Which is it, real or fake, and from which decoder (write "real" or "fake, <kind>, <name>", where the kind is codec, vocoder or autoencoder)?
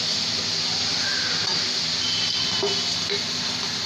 real